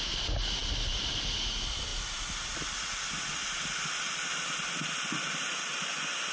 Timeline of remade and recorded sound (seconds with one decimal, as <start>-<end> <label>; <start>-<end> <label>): 0.0-6.3 recorded